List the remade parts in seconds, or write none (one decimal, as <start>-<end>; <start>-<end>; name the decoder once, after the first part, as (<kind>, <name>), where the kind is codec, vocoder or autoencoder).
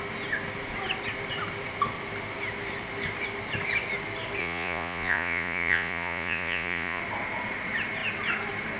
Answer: 4.4-7.0 (vocoder, Vocos)